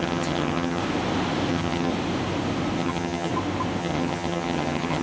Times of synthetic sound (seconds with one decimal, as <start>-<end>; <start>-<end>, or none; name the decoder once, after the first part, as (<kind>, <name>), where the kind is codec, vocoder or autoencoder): 0.0-0.8 (vocoder, HiFi-GAN); 1.5-1.9; 2.8-3.3; 3.8-5.0